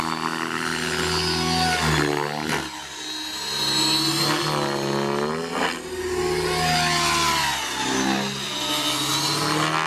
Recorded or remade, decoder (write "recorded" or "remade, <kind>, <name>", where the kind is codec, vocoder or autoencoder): recorded